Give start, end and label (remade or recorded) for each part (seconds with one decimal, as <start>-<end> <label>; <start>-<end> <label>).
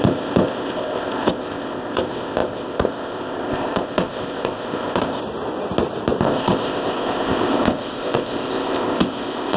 0.0-5.2 remade; 5.2-6.2 recorded; 6.2-9.6 remade